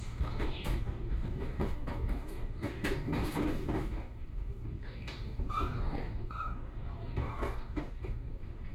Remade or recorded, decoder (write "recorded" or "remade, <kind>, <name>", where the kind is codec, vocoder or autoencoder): remade, codec, DAC